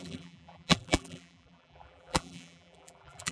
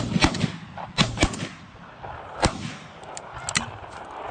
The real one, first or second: second